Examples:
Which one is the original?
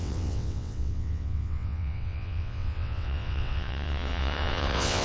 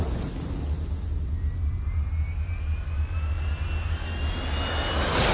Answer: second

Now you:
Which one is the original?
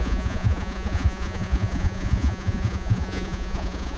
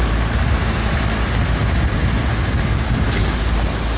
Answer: second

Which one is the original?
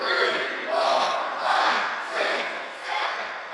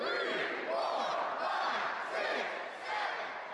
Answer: second